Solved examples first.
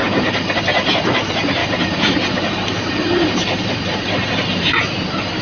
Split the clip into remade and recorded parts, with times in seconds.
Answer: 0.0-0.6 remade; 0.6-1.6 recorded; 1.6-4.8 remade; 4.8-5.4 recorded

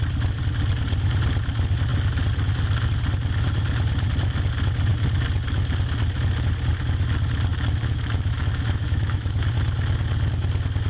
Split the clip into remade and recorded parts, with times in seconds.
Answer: 0.0-7.5 recorded; 7.5-9.3 remade; 9.3-10.9 recorded

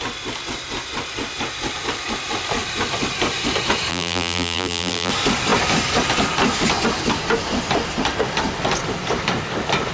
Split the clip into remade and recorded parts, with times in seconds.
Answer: 0.0-3.9 recorded; 3.9-5.1 remade; 5.1-9.9 recorded

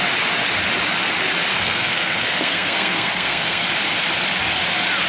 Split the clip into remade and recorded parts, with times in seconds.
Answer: 0.0-1.5 recorded; 1.5-3.7 remade; 3.7-5.1 recorded

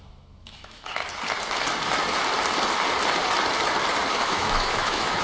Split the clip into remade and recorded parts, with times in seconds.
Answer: 0.0-1.0 remade; 1.0-4.1 recorded; 4.1-5.2 remade

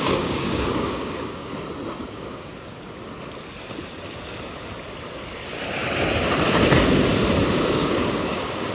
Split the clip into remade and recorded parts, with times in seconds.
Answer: 0.0-1.5 remade; 1.5-2.1 recorded; 2.1-2.5 remade; 2.5-7.5 recorded; 7.5-8.7 remade

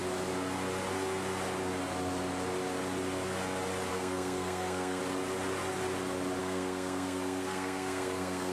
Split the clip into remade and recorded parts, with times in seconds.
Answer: 0.0-3.9 recorded; 3.9-5.0 remade; 5.0-6.4 recorded; 6.4-8.5 remade